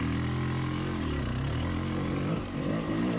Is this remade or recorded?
recorded